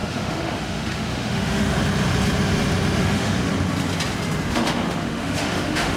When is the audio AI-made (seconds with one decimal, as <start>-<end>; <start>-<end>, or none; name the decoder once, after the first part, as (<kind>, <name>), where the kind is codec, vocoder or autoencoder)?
0.0-1.7 (autoencoder, DAC-VAE); 3.0-3.5; 4.5-6.0